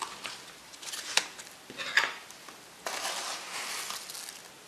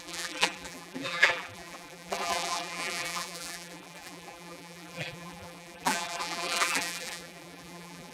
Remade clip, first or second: second